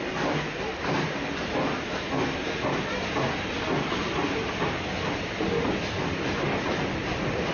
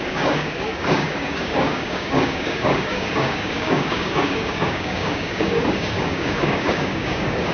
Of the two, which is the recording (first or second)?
first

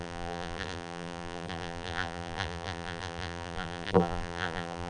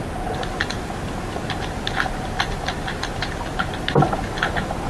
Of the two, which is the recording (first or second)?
second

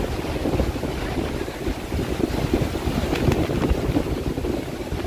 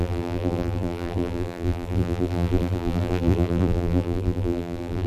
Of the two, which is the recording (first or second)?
first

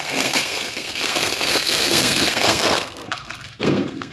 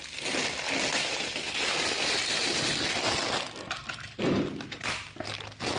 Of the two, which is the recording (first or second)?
second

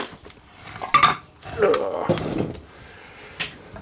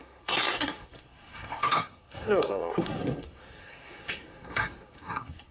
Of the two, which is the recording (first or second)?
first